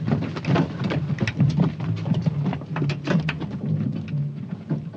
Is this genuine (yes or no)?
yes